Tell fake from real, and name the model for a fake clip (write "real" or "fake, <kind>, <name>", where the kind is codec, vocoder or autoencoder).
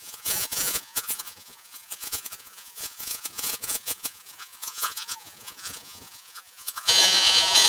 fake, vocoder, Vocos